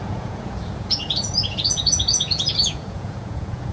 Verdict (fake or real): fake